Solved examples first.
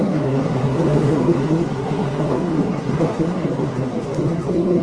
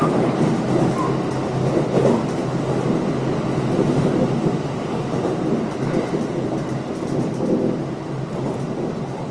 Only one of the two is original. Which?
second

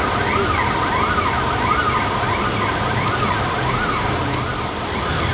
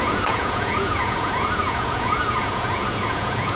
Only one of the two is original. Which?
first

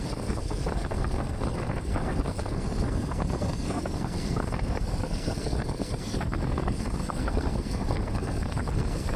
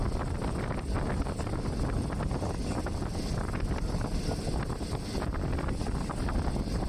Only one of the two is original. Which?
second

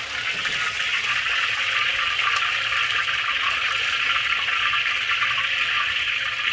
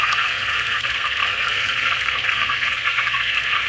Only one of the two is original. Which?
first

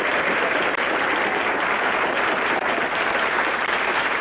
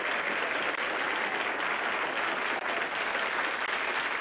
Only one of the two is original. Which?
second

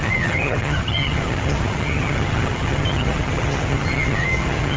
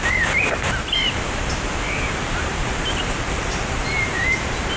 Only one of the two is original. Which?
second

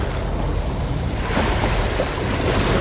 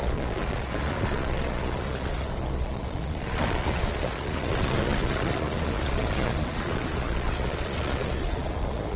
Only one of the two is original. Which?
first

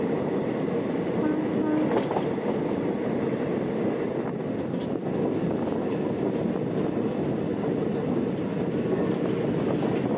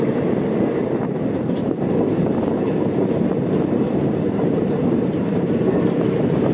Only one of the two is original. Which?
first